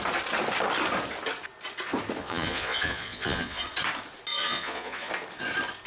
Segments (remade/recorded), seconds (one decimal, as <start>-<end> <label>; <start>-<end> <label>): 0.0-2.2 recorded; 2.2-3.6 remade; 3.6-4.3 recorded; 4.3-5.1 remade; 5.1-5.9 recorded